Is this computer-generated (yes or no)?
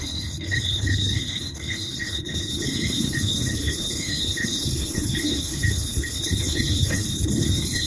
yes